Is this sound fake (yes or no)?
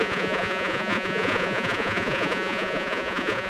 yes